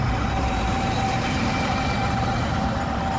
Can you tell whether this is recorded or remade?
remade